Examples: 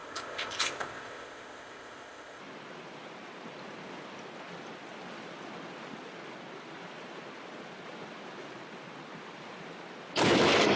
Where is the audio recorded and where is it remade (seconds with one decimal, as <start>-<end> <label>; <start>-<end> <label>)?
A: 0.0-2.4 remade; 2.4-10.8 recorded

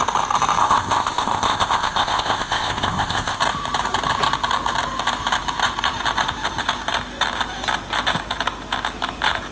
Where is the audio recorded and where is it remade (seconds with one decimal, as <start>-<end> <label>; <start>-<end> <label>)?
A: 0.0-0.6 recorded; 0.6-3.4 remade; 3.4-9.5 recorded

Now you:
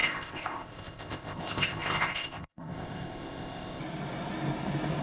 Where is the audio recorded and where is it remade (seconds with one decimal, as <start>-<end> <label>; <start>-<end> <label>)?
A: 0.0-3.8 remade; 3.8-5.0 recorded

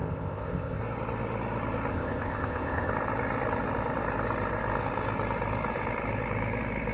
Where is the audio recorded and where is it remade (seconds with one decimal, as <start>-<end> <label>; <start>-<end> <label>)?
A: 0.0-0.8 remade; 0.8-1.9 recorded; 1.9-2.9 remade; 2.9-6.9 recorded